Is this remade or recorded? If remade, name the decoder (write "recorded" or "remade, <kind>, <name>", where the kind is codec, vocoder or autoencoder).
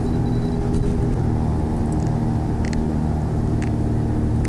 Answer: recorded